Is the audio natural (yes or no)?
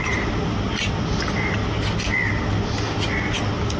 yes